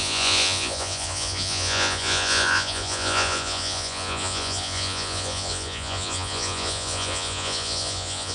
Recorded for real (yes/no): no